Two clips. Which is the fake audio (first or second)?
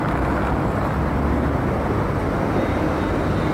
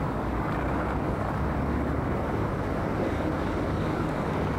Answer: second